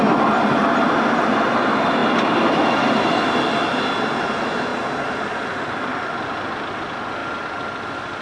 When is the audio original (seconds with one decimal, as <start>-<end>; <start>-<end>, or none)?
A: 0.0-2.0; 3.2-8.2